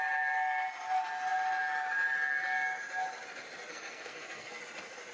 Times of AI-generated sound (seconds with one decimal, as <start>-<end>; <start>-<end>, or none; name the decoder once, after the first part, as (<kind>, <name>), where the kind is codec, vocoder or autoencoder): 3.7-4.6 (codec, SNAC)

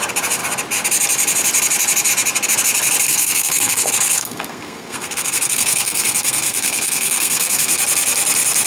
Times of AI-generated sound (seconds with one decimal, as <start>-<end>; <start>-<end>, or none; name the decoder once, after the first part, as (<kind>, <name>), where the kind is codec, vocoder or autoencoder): 3.1-7.8 (codec, SNAC)

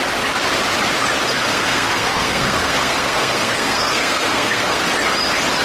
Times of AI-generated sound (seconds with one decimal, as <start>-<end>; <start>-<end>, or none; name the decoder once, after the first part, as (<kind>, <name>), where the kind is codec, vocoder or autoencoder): 1.5-4.8 (codec, SNAC)

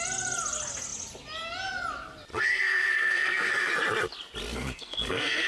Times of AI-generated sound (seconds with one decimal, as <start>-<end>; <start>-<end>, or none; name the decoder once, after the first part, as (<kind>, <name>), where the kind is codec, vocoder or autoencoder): 2.3-3.7 (codec, SNAC); 4.5-5.5